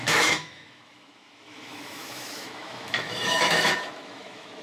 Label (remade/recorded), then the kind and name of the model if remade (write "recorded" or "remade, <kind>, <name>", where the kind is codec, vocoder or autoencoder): remade, autoencoder, DAC-VAE